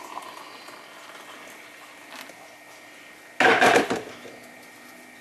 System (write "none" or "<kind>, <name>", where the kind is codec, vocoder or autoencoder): none